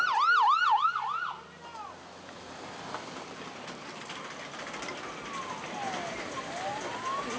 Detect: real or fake real